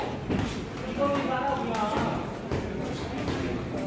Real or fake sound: real